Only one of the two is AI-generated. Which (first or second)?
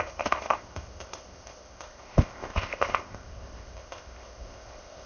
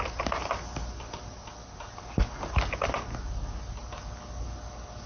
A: first